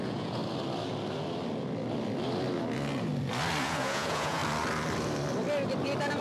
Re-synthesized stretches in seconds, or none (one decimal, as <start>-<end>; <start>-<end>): 0.0-0.4; 3.6-4.4